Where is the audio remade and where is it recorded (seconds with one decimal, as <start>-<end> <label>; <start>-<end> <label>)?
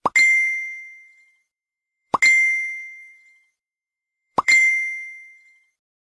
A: 0.0-1.1 recorded; 1.1-2.2 remade; 2.2-3.0 recorded; 3.0-4.7 remade; 4.7-6.0 recorded